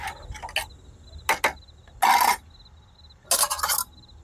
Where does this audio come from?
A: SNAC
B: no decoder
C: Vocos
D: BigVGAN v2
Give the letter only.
B